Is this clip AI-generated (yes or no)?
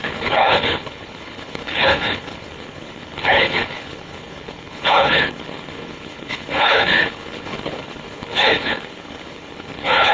yes